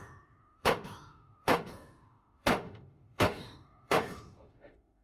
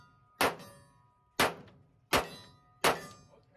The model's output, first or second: first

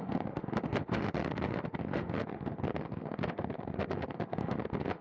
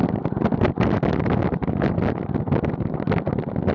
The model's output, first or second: first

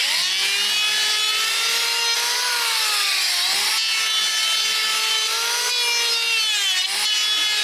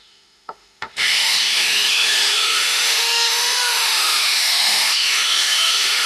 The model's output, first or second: second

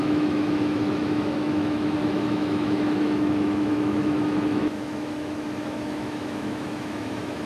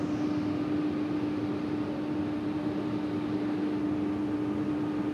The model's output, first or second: first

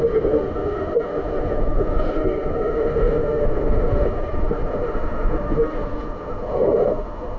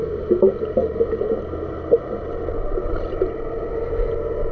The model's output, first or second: first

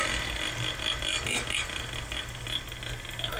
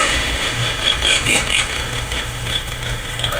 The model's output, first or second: second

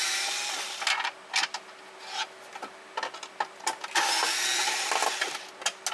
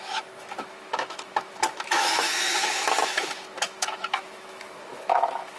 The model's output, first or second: second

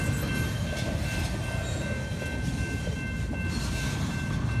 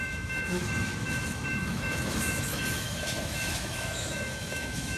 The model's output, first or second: second